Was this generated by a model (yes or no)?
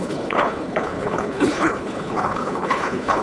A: yes